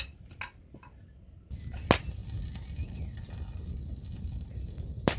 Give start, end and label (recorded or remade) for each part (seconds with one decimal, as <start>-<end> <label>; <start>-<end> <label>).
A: 0.0-5.2 recorded